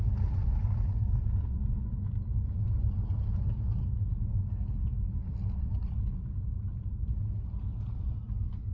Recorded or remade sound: recorded